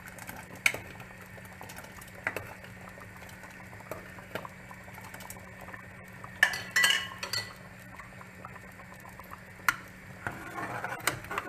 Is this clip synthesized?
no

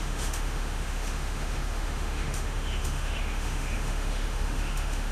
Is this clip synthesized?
yes